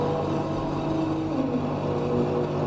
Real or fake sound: real